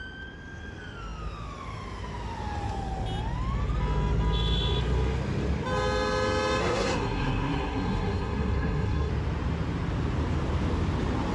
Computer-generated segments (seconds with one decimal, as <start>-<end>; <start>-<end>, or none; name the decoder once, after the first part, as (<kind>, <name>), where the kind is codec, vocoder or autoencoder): 6.6-9.1 (codec, SNAC)